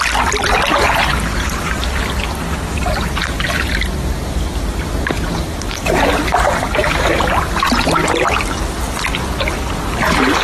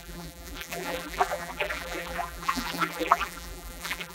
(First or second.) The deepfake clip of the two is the second